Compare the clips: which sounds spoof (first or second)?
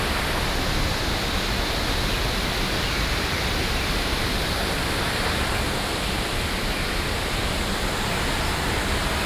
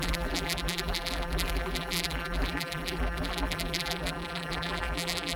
second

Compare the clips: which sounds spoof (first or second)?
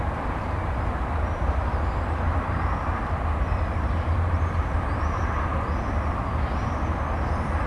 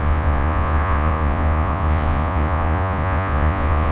second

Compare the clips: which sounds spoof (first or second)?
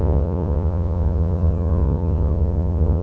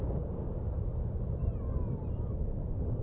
first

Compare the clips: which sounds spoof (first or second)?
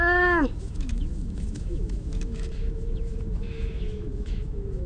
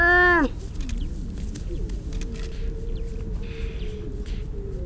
first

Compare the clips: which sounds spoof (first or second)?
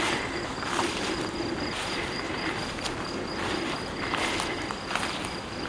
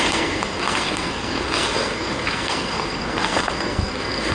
second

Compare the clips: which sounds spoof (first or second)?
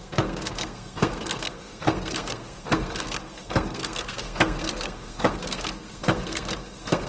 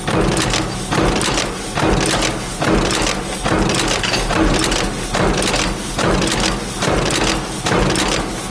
first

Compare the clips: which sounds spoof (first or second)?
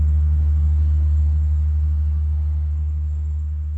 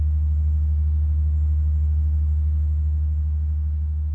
first